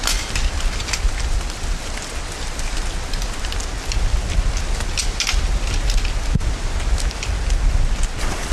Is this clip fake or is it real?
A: real